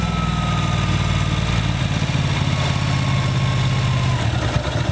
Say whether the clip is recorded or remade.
recorded